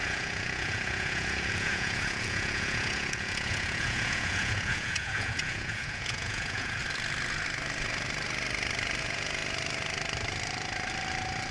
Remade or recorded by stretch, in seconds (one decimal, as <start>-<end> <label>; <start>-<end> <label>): 0.0-6.8 remade; 6.8-9.0 recorded; 9.0-9.4 remade; 9.4-11.5 recorded